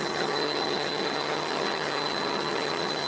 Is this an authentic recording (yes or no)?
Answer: no